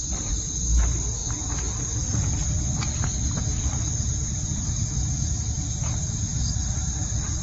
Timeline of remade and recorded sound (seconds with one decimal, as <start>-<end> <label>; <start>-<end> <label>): 0.0-7.4 recorded